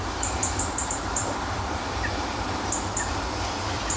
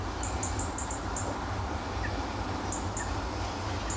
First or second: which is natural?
second